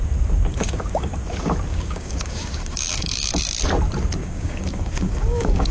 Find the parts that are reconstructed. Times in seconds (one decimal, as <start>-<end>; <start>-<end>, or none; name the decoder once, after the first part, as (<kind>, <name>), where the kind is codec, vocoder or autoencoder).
0.5-1.1 (codec, DAC); 1.7-3.3; 4.2-5.7